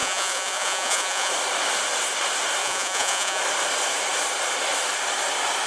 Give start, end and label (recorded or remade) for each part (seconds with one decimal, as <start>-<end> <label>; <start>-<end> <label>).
0.0-1.3 remade; 1.3-2.6 recorded; 2.6-3.4 remade; 3.4-5.7 recorded